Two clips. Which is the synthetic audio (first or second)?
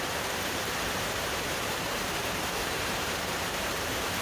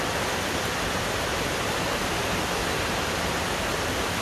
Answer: first